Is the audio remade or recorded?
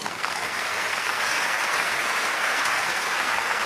remade